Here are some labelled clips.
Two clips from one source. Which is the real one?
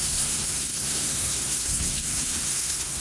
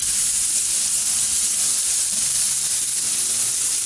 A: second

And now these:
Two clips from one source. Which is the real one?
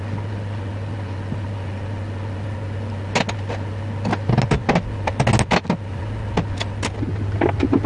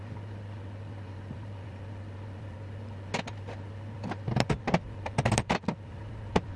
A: first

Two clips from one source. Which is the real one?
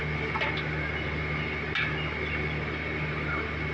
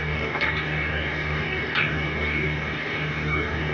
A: first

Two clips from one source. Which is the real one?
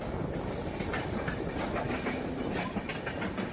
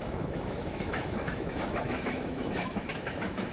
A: first